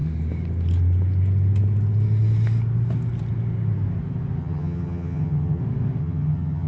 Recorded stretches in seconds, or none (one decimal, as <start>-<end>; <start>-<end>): 0.0-4.4; 5.6-6.0